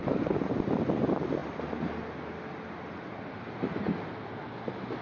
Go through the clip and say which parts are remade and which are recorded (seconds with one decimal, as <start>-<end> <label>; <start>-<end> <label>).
0.0-5.0 recorded

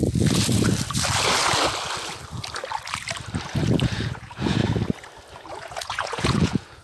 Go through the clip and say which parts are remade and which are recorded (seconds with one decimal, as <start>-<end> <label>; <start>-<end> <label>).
0.0-3.8 recorded; 3.8-4.6 remade; 4.6-5.5 recorded; 5.5-6.8 remade

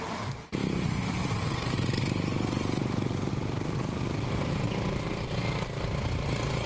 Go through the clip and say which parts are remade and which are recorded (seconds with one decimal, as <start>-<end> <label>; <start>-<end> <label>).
0.0-0.6 recorded; 0.6-2.0 remade; 2.0-6.7 recorded

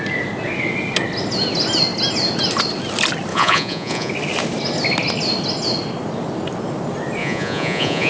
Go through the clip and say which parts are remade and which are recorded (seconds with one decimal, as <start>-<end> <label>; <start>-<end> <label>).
0.0-3.3 recorded; 3.3-4.1 remade; 4.1-7.2 recorded; 7.2-8.1 remade